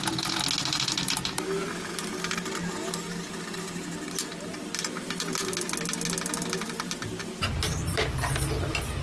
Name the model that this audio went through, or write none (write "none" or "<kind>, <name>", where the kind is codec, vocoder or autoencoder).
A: none